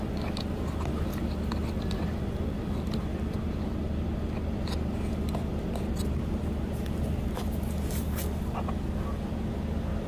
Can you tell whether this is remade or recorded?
recorded